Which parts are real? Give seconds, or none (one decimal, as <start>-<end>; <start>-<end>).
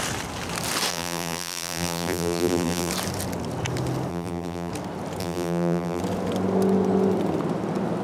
0.0-0.9; 2.9-4.1; 4.7-5.2; 6.0-8.0